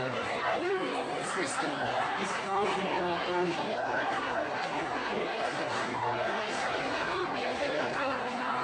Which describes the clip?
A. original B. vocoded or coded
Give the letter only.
B